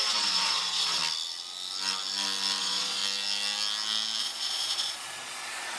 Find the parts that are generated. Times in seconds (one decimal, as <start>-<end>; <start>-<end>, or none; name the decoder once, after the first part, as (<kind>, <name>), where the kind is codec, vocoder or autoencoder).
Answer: 0.0-1.0 (vocoder, Vocos); 2.6-3.0; 4.2-5.8

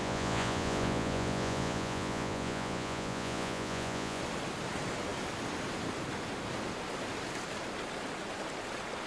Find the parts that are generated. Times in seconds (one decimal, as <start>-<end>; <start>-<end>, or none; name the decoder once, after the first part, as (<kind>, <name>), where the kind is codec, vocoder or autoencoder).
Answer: 0.0-4.2 (vocoder, Vocos)

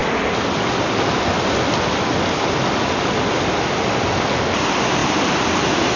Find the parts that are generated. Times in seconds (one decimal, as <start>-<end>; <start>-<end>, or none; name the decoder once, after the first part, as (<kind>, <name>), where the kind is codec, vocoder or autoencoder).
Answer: none

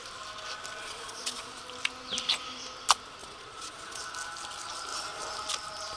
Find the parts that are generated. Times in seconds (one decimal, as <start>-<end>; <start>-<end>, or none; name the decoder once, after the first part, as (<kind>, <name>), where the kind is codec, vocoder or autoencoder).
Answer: 0.8-1.6 (vocoder, Vocos); 3.2-4.0